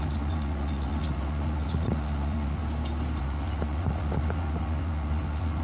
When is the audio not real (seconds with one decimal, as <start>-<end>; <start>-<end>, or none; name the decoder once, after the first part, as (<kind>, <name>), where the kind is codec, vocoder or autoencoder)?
0.0-2.6 (vocoder, Vocos); 3.2-5.6